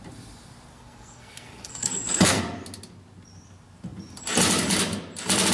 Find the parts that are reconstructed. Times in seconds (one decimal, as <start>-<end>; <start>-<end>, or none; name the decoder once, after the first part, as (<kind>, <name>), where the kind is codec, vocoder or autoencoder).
0.7-2.4 (codec, SNAC)